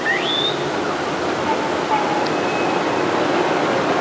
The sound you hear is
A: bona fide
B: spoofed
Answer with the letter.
A